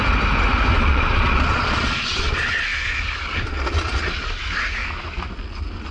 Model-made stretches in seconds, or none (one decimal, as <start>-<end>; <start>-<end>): 0.7-2.3